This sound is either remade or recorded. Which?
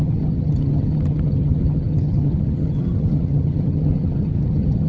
remade